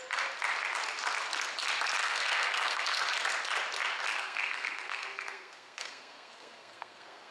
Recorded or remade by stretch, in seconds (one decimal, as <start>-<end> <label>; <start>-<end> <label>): 0.0-2.0 recorded; 2.0-3.0 remade; 3.0-4.1 recorded; 4.1-7.3 remade